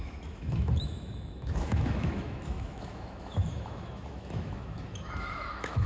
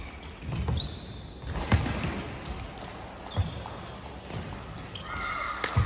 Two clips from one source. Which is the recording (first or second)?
second